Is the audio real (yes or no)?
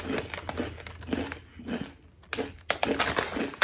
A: yes